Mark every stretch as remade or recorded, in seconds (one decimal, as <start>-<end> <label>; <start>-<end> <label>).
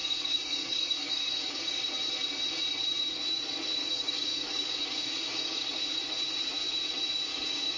0.0-1.8 remade; 1.8-3.8 recorded; 3.8-5.8 remade; 5.8-7.3 recorded; 7.3-7.8 remade